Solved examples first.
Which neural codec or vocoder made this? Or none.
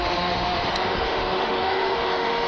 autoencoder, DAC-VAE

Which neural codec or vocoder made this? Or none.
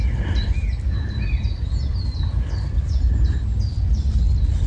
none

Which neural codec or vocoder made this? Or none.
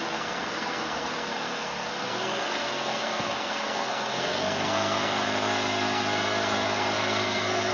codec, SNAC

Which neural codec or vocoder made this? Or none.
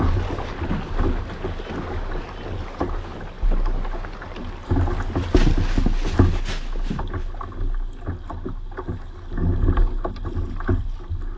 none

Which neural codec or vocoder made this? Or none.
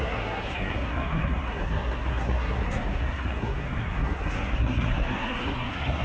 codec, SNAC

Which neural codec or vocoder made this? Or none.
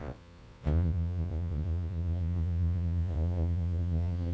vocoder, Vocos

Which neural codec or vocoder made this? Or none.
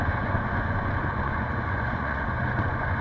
vocoder, Vocos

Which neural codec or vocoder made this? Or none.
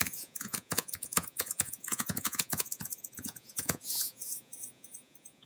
vocoder, Vocos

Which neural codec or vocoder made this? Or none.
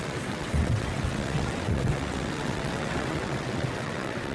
vocoder, WaveNeXt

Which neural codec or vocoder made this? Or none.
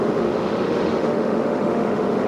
autoencoder, DAC-VAE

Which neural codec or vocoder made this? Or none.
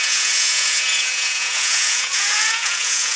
vocoder, Vocos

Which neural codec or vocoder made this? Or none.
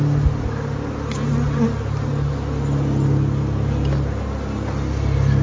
none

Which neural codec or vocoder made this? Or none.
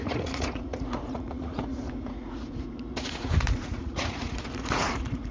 vocoder, Vocos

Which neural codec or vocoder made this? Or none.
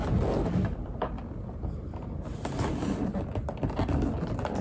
none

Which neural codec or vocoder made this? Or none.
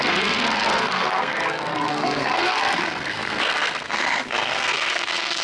codec, SNAC